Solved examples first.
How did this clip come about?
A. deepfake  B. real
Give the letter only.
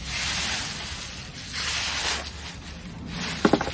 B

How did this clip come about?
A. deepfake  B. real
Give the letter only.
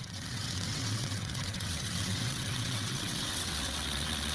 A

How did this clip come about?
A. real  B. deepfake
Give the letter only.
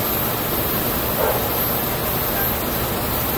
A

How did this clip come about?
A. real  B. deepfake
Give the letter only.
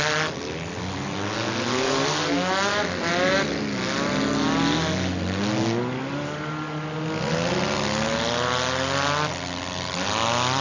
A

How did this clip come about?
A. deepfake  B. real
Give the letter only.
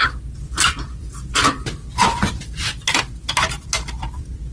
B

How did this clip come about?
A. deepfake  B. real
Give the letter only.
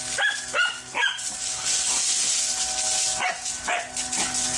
B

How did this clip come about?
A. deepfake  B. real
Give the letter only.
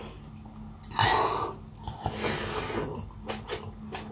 B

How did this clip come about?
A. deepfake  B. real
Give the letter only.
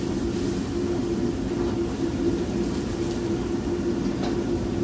B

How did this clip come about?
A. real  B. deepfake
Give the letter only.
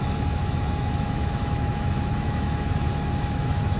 B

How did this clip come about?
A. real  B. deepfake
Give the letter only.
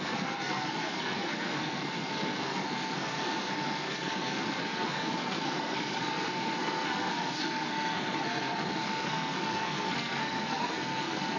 B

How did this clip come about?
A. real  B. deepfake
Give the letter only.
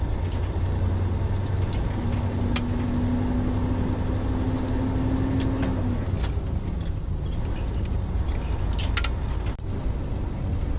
A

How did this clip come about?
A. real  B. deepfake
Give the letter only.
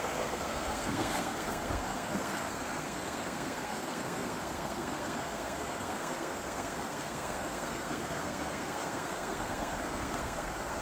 B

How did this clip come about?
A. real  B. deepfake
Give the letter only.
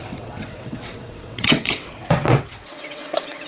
B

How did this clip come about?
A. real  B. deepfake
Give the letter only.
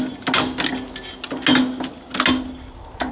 A